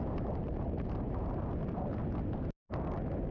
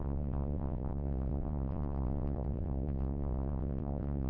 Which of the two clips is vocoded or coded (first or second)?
second